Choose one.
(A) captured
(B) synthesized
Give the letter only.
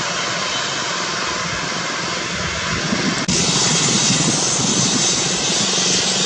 A